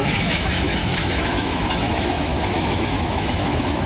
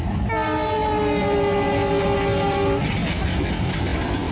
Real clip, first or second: second